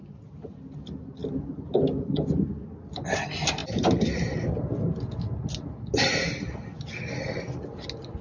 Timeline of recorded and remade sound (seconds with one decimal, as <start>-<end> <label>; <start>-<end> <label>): 0.0-8.2 recorded